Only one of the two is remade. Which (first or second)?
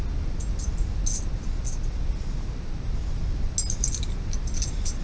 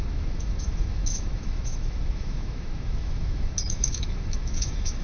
second